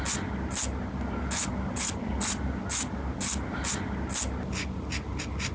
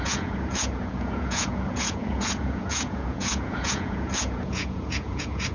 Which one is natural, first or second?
first